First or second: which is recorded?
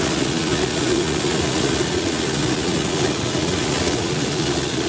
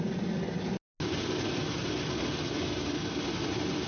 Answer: second